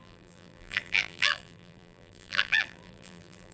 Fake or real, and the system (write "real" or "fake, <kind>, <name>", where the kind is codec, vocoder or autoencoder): fake, vocoder, BigVGAN v2